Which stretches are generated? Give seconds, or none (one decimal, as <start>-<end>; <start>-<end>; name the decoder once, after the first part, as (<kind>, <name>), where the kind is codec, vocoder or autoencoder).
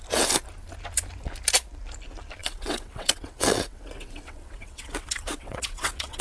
2.4-6.2 (vocoder, WaveNeXt)